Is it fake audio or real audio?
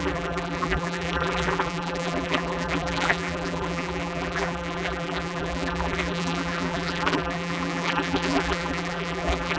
fake